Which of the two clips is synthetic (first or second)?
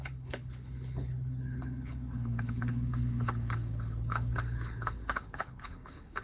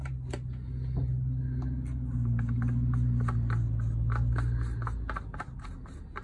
first